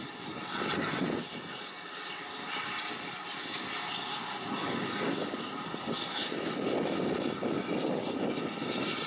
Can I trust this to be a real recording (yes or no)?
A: yes